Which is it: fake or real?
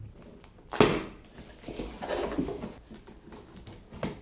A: real